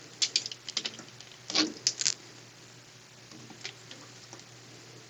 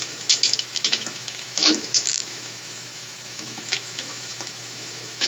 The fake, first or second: second